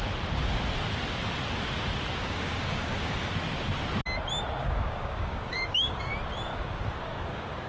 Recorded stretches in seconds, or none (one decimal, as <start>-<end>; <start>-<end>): 0.0-2.2; 3.3-4.6; 6.1-6.5